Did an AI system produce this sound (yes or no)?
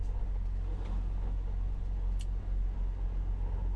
no